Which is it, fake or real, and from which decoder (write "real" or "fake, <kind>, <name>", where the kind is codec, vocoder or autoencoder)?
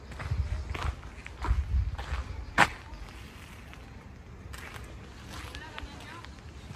real